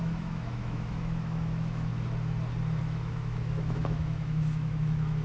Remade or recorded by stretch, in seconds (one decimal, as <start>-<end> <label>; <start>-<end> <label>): 0.0-1.9 remade; 1.9-2.8 recorded; 2.8-5.2 remade